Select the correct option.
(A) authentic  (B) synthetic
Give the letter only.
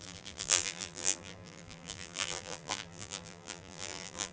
B